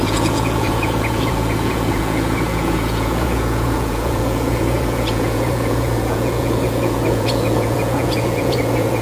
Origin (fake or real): fake